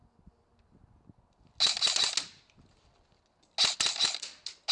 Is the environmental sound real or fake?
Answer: real